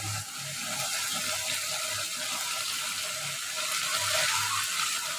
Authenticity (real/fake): real